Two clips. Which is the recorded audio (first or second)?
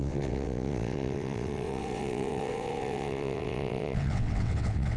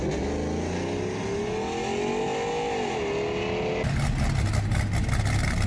second